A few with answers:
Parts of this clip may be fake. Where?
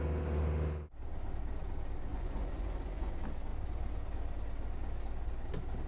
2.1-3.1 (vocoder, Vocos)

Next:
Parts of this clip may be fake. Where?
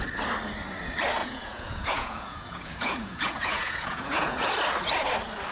1.2-4.5 (vocoder, Vocos)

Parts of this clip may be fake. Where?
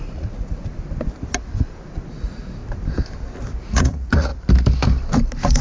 0.0-0.7 (vocoder, Vocos); 2.1-2.6; 3.6-4.3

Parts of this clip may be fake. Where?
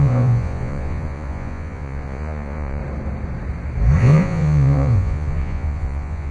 0.0-2.8 (vocoder, Vocos); 4.0-6.3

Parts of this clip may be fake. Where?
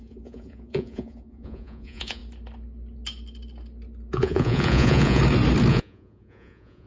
0.0-2.2 (vocoder, Vocos); 4.1-5.2; 5.7-6.9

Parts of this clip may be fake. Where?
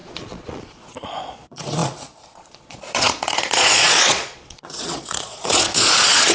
0.0-6.3 (vocoder, Vocos)